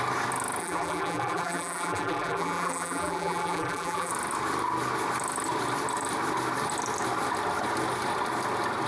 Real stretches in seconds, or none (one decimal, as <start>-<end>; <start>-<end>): 0.0-0.6; 4.1-8.9